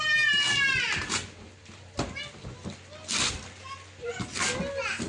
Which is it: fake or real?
real